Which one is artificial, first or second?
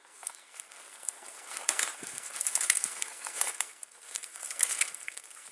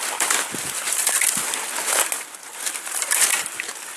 first